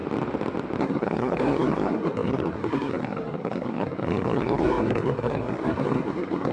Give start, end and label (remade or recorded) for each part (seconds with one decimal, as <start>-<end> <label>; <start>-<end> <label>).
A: 0.0-0.8 recorded; 0.8-6.5 remade